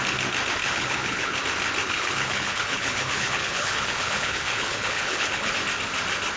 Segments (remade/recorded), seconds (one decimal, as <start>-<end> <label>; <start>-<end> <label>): 0.0-0.6 recorded; 0.6-1.4 remade; 1.4-1.8 recorded; 1.8-5.5 remade; 5.5-6.4 recorded

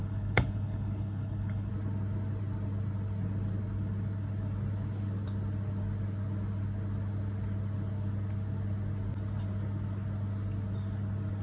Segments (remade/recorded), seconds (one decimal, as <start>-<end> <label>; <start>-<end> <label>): 0.0-1.7 remade; 1.7-11.4 recorded

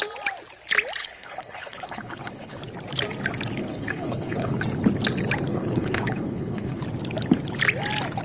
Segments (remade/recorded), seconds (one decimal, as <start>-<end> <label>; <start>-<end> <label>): 0.0-1.0 recorded; 1.0-2.6 remade; 2.6-3.6 recorded; 3.6-4.6 remade; 4.6-5.5 recorded; 5.5-6.8 remade; 6.8-8.2 recorded

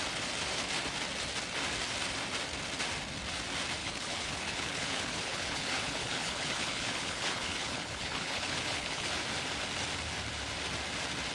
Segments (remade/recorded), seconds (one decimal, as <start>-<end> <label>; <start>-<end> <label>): 0.0-3.8 recorded; 3.8-9.1 remade; 9.1-11.3 recorded

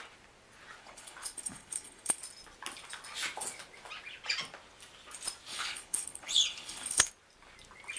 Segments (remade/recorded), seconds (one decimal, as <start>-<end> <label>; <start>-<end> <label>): 0.0-0.8 recorded; 0.8-2.2 remade; 2.2-5.5 recorded; 5.5-7.1 remade; 7.1-8.0 recorded

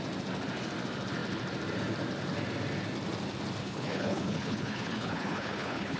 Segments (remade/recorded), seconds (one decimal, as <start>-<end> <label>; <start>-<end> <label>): 0.0-3.6 recorded; 3.6-6.0 remade

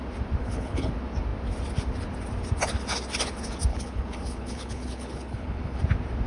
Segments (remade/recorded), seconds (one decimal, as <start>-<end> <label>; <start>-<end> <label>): 0.0-0.4 recorded; 0.4-0.9 remade; 0.9-3.7 recorded; 3.7-5.8 remade; 5.8-6.3 recorded

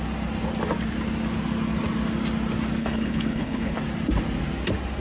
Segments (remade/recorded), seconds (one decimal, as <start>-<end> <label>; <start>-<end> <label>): 0.0-2.8 recorded; 2.8-3.8 remade; 3.8-5.0 recorded